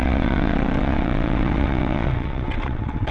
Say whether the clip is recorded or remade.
remade